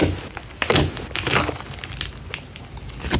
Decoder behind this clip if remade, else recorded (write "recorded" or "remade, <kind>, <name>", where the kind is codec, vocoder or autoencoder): recorded